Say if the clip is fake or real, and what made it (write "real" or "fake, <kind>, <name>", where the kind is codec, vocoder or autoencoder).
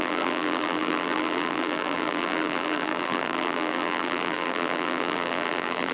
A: fake, vocoder, BigVGAN v2